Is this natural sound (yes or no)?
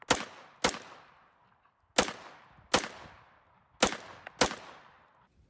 yes